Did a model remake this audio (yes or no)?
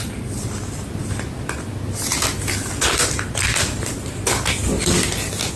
no